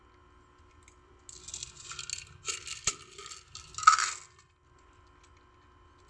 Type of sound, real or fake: real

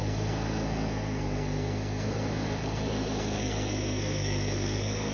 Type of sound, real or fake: fake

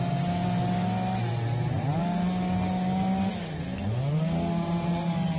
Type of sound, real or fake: real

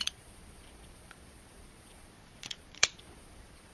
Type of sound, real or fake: fake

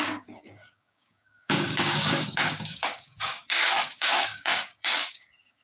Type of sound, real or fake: fake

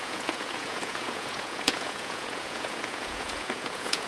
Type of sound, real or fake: fake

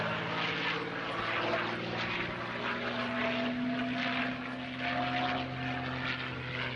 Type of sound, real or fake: real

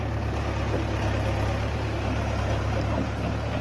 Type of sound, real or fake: real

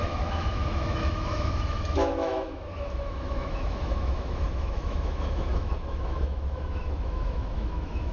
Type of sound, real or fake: fake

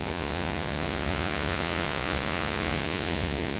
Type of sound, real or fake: fake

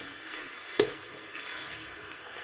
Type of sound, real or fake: fake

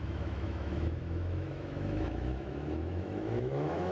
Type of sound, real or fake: fake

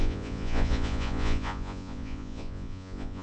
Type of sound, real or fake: fake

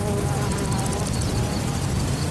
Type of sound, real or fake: real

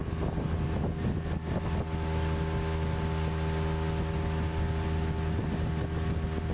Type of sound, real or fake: real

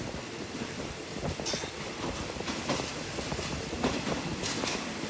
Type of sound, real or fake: real